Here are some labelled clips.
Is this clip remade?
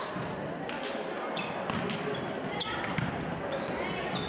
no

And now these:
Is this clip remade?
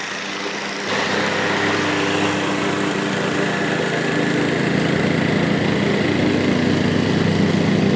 no